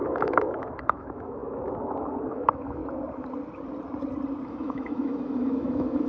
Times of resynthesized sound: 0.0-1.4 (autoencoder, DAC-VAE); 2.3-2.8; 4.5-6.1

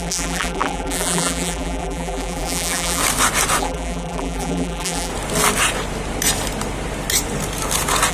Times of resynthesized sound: 0.0-3.0 (vocoder, BigVGAN v2); 3.6-5.1

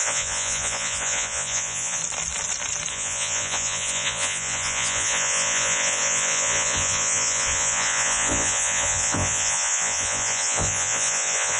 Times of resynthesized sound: 0.0-2.0 (vocoder, Vocos); 2.9-11.6

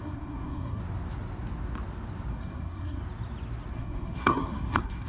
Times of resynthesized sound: 0.0-0.8 (codec, SNAC); 2.3-3.0; 3.7-5.1

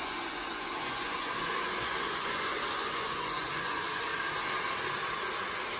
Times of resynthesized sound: 0.0-4.1 (vocoder, Vocos)

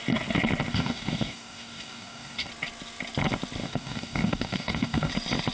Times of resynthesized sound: 0.7-2.5 (codec, DAC); 3.6-5.1

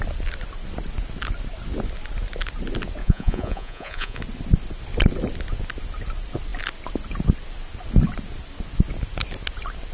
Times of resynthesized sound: 3.0-4.2 (vocoder, Vocos)